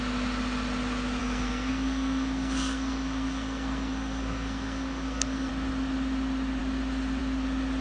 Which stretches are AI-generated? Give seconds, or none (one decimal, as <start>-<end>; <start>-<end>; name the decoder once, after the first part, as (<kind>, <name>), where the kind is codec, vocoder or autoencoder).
1.2-5.5 (codec, SNAC)